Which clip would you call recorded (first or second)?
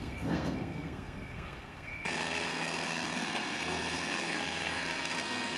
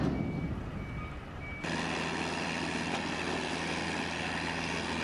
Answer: second